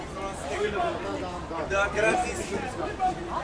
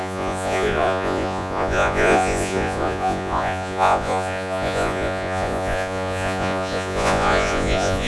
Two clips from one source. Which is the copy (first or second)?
second